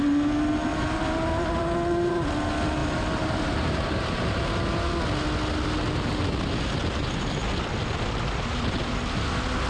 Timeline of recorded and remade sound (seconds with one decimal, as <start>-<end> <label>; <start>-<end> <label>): 0.0-0.7 recorded; 0.7-2.1 remade; 2.1-2.8 recorded; 2.8-4.9 remade; 4.9-9.7 recorded